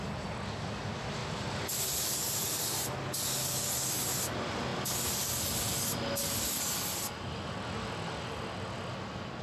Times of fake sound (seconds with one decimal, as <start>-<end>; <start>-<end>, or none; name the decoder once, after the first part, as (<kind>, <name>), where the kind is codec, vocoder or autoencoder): 1.2-2.7 (vocoder, BigVGAN v2)